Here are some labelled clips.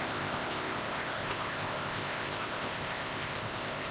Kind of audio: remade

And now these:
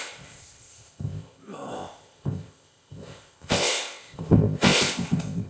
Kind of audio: remade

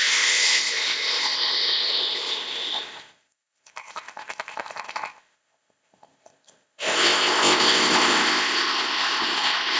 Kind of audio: remade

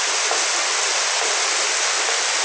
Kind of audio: recorded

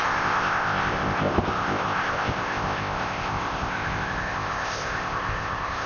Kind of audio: remade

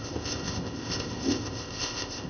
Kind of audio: remade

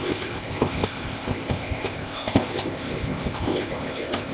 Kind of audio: remade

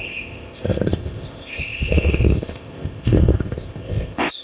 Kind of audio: remade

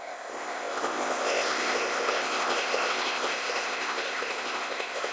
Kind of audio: remade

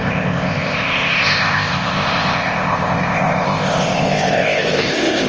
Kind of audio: remade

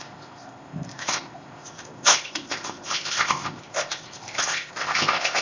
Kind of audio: remade